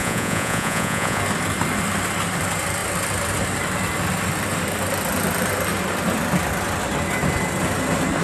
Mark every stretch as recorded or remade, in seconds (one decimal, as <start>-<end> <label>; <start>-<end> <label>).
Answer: 0.0-1.2 remade; 1.2-8.2 recorded